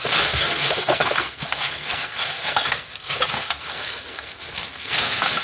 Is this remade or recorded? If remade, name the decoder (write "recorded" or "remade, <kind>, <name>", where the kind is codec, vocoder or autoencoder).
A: remade, codec, SNAC